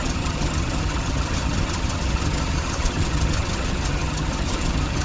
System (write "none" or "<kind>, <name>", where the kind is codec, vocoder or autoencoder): vocoder, HiFi-GAN